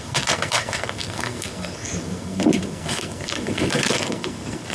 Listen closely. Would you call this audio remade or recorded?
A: remade